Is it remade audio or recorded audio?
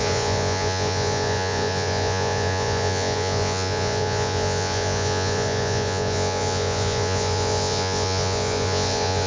remade